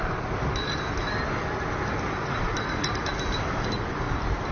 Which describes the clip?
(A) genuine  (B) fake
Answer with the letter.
A